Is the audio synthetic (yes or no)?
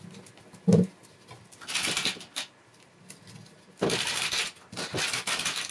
no